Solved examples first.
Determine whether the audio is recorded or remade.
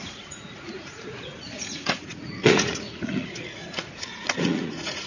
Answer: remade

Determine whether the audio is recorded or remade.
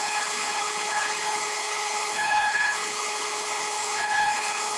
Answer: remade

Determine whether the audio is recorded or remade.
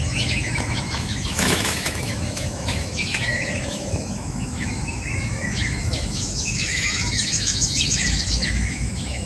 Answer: remade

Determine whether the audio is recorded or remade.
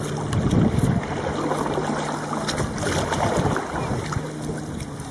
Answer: recorded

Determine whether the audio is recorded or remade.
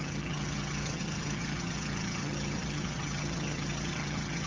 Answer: remade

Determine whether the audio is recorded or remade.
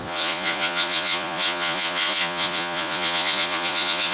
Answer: remade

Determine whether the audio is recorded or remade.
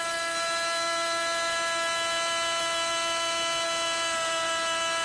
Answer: recorded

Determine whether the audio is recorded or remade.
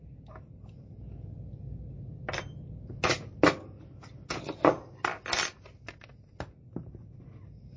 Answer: recorded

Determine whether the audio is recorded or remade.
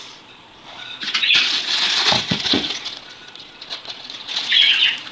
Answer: remade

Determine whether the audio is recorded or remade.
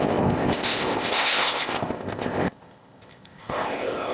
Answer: remade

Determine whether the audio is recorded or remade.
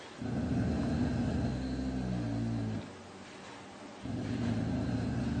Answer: recorded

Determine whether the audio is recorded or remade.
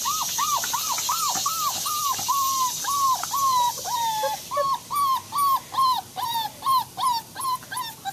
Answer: recorded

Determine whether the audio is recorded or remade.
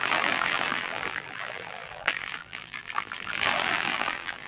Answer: remade